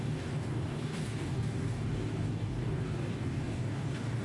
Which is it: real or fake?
fake